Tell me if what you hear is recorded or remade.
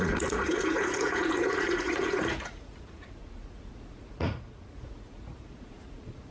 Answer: remade